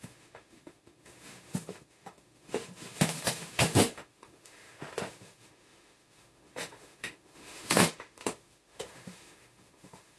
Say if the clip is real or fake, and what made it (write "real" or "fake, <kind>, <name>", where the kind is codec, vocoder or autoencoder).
fake, autoencoder, DAC-VAE